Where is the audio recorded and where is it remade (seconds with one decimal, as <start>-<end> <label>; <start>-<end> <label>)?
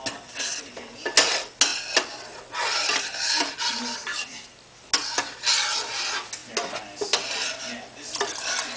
0.0-8.8 recorded